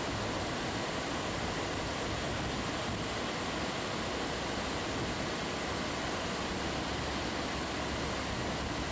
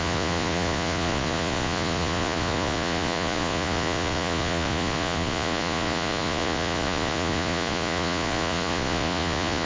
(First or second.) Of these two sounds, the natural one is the first